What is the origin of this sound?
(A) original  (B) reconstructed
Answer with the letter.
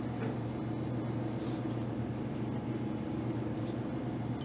A